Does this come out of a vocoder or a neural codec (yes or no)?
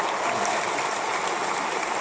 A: no